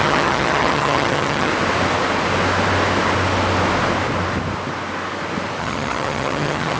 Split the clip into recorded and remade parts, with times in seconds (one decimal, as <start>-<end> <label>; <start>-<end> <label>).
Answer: 0.0-1.5 remade; 1.5-5.6 recorded; 5.6-6.8 remade